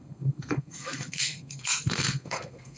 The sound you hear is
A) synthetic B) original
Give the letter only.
A